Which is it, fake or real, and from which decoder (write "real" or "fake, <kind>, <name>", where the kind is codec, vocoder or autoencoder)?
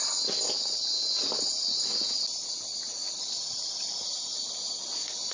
real